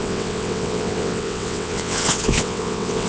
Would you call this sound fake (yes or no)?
yes